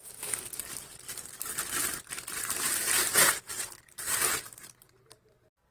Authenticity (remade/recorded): remade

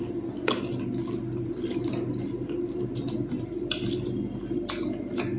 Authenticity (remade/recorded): remade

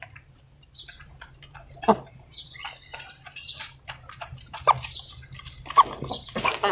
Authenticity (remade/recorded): remade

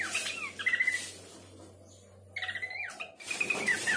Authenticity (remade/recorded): recorded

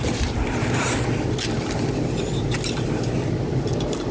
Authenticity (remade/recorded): remade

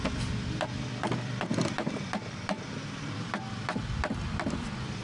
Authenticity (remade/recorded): remade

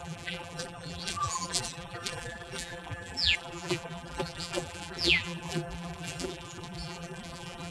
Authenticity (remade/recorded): remade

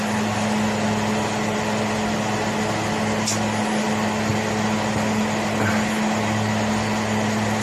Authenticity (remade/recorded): recorded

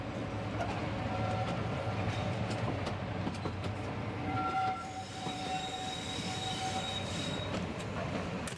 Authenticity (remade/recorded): remade